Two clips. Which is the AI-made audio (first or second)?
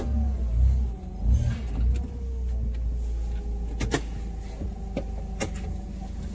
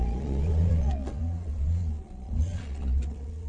second